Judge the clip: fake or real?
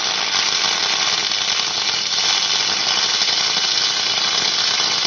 real